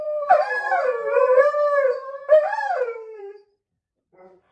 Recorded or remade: remade